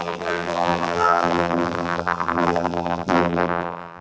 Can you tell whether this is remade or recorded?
remade